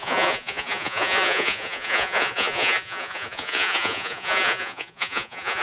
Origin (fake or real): fake